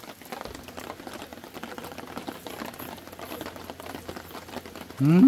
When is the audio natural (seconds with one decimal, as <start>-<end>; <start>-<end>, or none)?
0.0-5.3